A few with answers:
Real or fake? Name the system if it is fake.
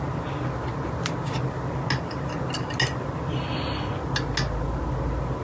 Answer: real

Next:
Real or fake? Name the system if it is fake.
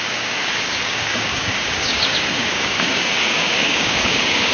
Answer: fake, codec, DAC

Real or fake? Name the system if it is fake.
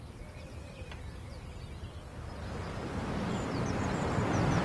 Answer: real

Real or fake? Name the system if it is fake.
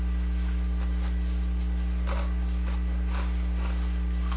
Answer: real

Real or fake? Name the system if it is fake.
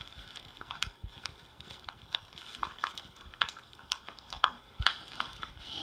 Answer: fake, codec, SNAC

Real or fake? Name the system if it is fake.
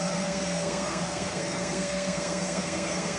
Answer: fake, codec, SNAC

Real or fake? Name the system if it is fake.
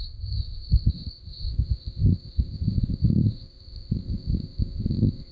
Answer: fake, codec, ZipCodec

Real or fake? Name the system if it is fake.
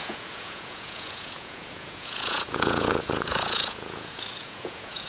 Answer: fake, vocoder, Vocos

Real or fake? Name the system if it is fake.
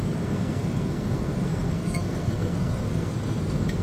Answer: fake, codec, SNAC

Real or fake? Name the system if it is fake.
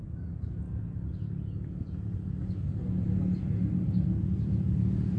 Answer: real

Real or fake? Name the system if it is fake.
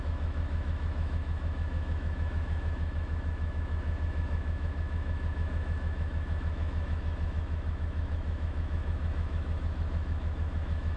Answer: fake, autoencoder, DAC-VAE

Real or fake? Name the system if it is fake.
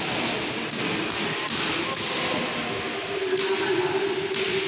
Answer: real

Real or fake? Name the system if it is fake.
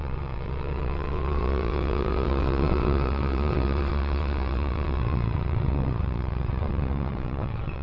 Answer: fake, vocoder, WaveNeXt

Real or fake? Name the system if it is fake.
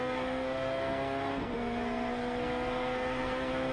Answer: fake, codec, SNAC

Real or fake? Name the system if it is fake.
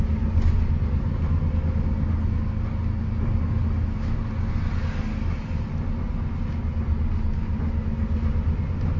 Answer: real